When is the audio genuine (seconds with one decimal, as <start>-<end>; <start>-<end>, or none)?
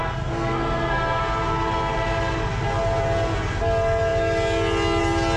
1.2-5.4